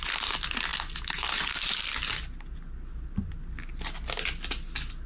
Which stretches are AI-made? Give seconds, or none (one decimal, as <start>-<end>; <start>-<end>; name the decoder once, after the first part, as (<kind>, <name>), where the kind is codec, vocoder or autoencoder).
none

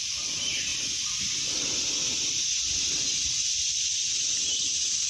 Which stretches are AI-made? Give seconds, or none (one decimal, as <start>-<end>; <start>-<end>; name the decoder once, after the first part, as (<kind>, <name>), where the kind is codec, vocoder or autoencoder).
0.0-0.7 (vocoder, BigVGAN v2); 2.3-3.1; 4.6-5.1

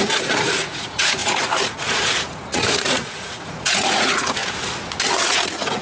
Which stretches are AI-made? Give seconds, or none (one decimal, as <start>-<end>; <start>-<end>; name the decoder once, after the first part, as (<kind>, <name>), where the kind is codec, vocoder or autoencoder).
0.0-4.4 (vocoder, Vocos); 5.2-5.8

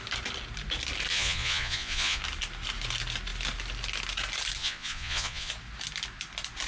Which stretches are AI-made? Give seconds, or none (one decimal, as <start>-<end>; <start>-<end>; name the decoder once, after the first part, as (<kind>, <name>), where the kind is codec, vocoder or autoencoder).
1.1-2.2 (vocoder, Vocos); 4.6-5.5

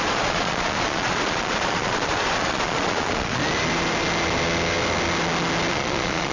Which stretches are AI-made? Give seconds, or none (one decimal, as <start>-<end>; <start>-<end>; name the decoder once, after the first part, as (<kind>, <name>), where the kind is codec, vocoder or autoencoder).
0.0-3.4 (vocoder, Vocos); 5.7-6.3

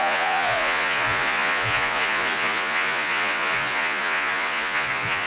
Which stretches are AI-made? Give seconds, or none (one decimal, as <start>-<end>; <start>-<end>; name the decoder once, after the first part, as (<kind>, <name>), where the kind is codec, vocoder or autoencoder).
0.0-5.3 (vocoder, Vocos)

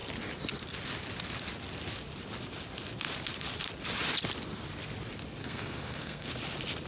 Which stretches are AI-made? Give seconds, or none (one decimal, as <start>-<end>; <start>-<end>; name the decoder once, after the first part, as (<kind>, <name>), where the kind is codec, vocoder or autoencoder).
5.4-6.3 (codec, SNAC)